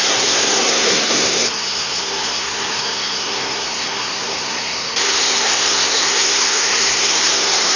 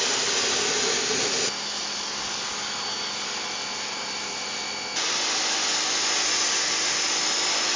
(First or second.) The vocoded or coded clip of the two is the first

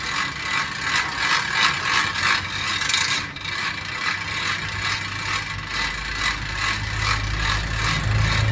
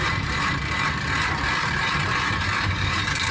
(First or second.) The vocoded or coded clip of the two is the second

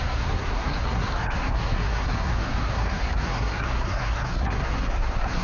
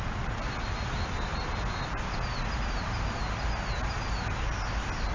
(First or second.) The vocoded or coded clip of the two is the first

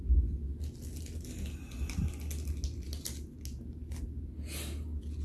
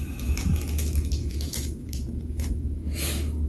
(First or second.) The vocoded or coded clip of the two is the second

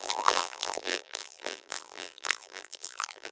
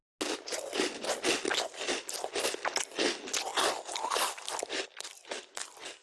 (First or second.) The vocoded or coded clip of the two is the first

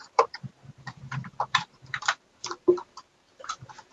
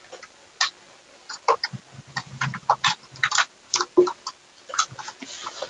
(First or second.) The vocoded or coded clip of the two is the first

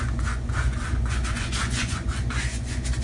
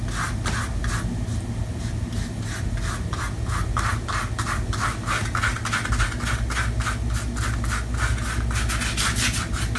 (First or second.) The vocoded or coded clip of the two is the first